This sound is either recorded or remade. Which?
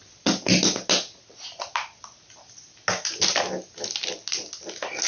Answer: recorded